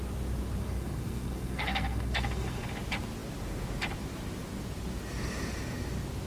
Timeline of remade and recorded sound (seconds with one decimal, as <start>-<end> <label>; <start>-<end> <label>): 0.0-0.6 recorded; 0.6-2.7 remade; 2.7-6.3 recorded